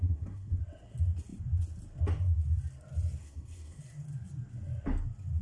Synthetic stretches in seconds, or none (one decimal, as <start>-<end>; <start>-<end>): 0.0-0.6; 3.2-3.8